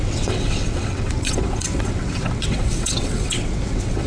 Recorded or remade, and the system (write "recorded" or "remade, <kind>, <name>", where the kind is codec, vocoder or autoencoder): remade, vocoder, WaveNeXt